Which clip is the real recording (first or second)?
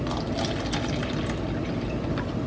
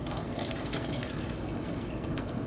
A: first